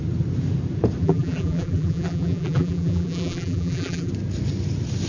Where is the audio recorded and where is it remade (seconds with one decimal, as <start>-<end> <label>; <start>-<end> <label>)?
0.0-1.0 recorded; 1.0-4.1 remade; 4.1-5.1 recorded